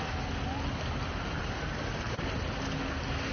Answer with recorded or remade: recorded